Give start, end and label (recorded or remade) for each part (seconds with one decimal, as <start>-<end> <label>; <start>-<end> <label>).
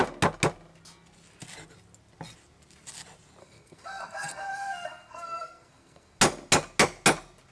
0.0-3.4 recorded; 3.4-6.2 remade; 6.2-7.5 recorded